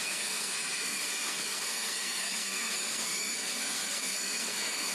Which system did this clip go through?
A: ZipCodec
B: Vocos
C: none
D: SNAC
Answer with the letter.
D